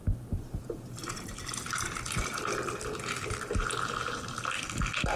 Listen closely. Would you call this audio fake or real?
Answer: real